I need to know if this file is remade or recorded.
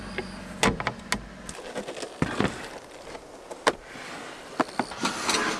recorded